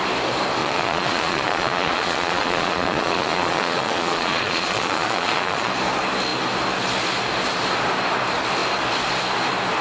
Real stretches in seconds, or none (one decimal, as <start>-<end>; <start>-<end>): 0.0-0.6; 5.7-9.8